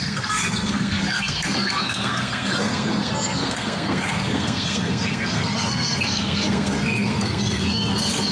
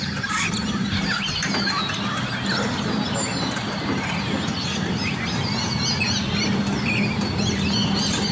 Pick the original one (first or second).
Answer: second